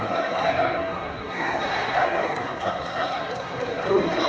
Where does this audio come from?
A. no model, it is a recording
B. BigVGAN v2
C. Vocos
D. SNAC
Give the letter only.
D